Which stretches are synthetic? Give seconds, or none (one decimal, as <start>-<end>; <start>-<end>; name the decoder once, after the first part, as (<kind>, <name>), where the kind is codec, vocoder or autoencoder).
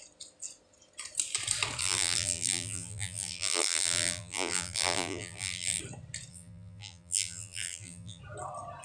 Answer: 1.8-5.8 (vocoder, BigVGAN v2); 6.3-8.2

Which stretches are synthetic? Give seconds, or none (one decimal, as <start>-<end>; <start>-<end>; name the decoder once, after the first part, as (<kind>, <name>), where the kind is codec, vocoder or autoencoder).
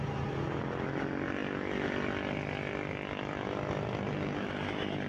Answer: none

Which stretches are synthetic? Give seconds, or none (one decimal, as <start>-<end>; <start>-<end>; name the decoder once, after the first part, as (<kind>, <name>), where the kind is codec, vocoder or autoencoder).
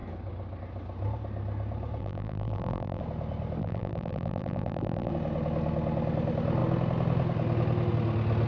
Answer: 2.0-3.0 (vocoder, BigVGAN v2); 3.6-5.1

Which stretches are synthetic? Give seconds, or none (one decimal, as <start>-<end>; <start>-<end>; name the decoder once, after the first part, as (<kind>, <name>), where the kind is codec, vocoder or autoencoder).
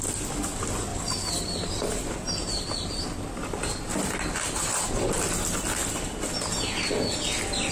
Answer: 0.9-3.0 (vocoder, BigVGAN v2); 5.8-6.4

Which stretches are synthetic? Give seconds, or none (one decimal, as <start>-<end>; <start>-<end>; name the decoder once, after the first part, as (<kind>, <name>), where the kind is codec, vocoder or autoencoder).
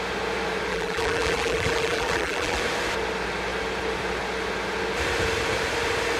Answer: 0.7-2.6 (vocoder, BigVGAN v2)